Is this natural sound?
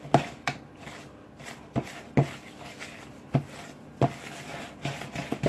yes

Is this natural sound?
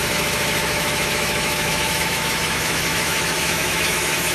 no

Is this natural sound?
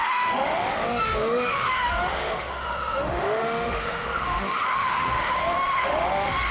no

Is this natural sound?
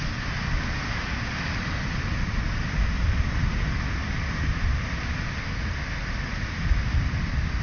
yes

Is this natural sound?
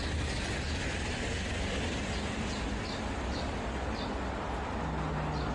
yes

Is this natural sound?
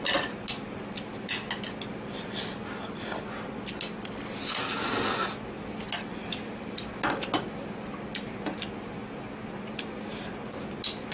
yes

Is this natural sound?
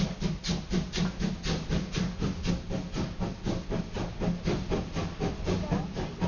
yes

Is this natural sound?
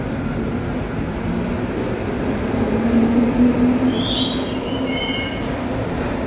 yes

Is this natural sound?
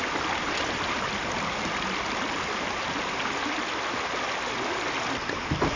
yes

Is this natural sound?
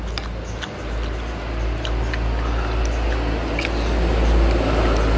yes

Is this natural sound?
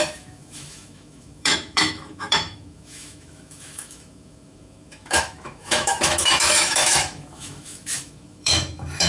no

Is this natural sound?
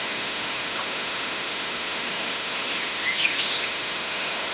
no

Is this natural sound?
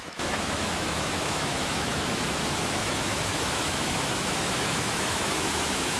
no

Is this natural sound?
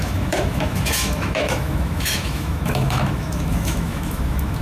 no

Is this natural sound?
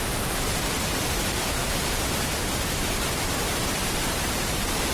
yes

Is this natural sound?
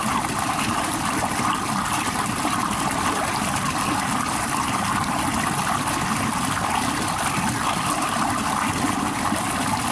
yes